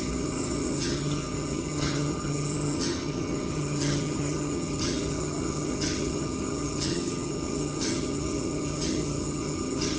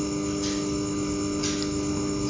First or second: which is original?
second